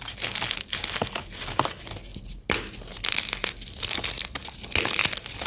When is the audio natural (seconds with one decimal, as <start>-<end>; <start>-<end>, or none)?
0.0-5.5

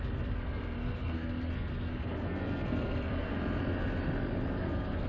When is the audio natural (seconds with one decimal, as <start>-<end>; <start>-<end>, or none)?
3.3-4.5